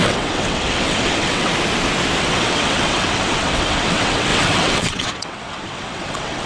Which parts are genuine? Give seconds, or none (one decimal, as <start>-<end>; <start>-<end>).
1.5-2.2